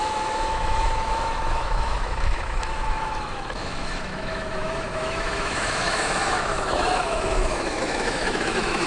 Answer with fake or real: fake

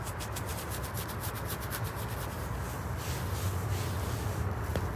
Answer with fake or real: real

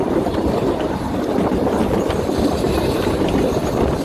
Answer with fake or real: real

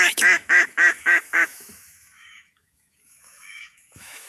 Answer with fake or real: fake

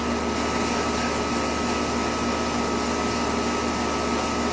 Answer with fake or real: real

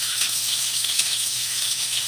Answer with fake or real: fake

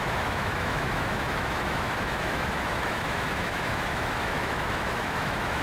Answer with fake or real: fake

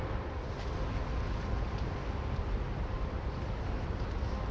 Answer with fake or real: real